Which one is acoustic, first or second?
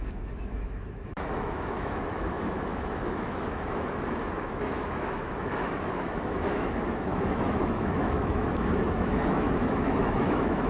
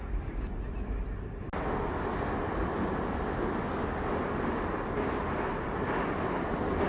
second